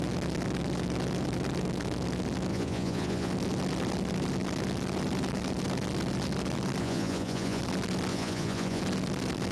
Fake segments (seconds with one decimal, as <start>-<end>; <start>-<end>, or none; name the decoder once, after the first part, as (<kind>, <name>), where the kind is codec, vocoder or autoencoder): 2.5-3.3 (vocoder, Vocos); 6.8-7.6; 8.1-8.8

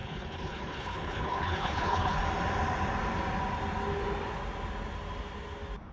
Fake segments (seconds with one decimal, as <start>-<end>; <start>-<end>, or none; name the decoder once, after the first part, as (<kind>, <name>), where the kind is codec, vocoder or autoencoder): 0.0-2.2 (codec, HILCodec)

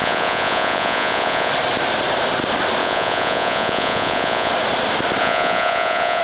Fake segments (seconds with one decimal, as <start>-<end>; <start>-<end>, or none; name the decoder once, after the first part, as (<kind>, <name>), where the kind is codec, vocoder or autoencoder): 0.0-1.5 (vocoder, Vocos); 2.8-4.5; 5.2-6.2

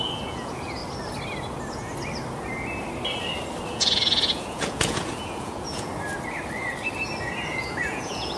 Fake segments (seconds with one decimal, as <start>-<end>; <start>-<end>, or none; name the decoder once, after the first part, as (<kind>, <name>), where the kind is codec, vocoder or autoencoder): 0.0-0.8 (vocoder, Vocos); 3.7-5.9; 7.5-8.4